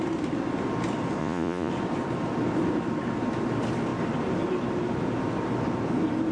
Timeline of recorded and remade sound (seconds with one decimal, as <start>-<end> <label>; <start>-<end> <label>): 0.0-1.2 recorded; 1.2-1.7 remade; 1.7-6.3 recorded